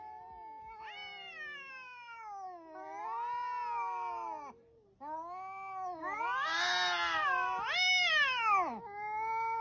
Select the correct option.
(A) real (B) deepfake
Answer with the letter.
A